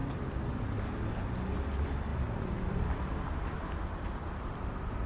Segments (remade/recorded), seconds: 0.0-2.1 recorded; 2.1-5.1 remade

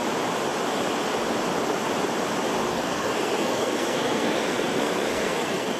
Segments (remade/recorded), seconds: 0.0-2.7 recorded; 2.7-5.8 remade

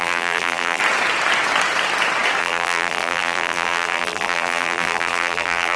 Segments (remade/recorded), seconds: 0.0-0.8 remade; 0.8-2.4 recorded; 2.4-5.8 remade